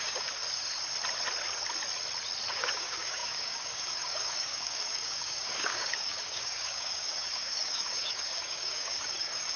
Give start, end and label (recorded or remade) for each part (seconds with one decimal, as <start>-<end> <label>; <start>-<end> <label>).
0.0-0.4 remade; 0.4-2.5 recorded; 2.5-9.6 remade